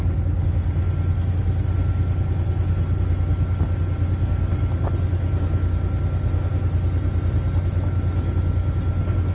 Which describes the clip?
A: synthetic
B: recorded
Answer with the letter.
B